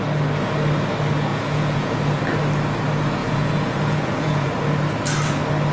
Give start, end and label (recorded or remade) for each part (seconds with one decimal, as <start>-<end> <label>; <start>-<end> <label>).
0.0-1.3 recorded; 1.3-2.2 remade; 2.2-3.2 recorded; 3.2-4.5 remade; 4.5-5.7 recorded